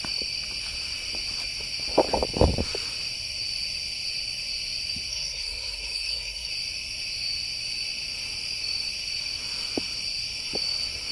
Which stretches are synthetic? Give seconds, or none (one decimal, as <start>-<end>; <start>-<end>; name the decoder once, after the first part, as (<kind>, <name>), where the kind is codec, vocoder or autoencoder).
5.1-6.5 (codec, SNAC)